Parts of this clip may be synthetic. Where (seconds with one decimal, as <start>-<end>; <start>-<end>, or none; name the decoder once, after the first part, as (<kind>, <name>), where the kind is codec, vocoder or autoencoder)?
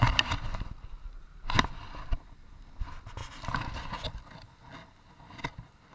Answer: none